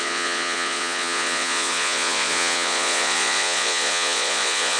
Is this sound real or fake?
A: fake